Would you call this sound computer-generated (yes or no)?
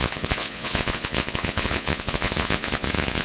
yes